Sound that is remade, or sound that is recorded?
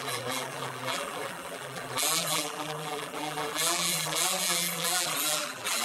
remade